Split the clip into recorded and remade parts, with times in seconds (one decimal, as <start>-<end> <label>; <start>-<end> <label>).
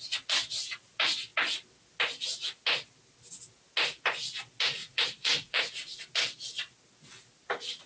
0.0-4.8 recorded; 4.8-6.0 remade; 6.0-7.9 recorded